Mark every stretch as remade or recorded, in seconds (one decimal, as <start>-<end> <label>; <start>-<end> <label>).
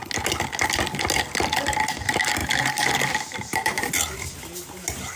0.0-2.4 recorded; 2.4-3.9 remade; 3.9-5.2 recorded